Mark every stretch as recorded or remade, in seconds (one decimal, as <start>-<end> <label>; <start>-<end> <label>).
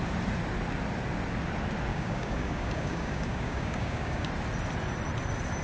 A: 0.0-1.9 recorded; 1.9-4.3 remade; 4.3-5.6 recorded